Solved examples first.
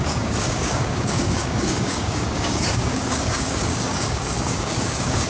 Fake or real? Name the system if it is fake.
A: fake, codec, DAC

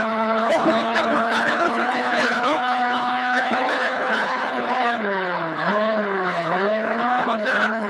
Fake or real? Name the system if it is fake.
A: fake, codec, HILCodec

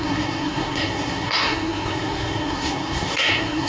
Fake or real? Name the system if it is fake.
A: fake, codec, SNAC